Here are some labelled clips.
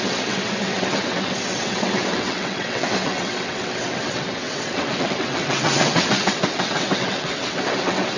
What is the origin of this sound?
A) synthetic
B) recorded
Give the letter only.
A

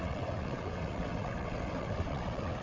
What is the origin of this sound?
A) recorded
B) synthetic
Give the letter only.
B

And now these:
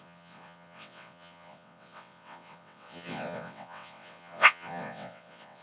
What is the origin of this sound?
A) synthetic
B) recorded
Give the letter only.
A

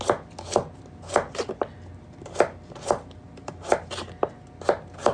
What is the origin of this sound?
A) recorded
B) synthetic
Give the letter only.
A